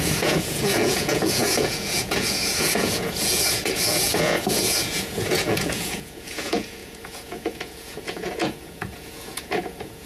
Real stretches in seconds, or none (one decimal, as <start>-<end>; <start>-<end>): none